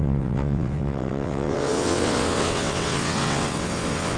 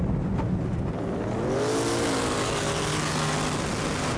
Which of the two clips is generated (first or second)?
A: first